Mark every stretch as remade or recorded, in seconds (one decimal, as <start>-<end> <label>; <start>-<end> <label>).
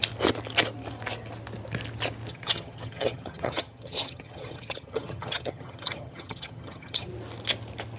0.0-2.3 recorded; 2.3-7.1 remade; 7.1-8.0 recorded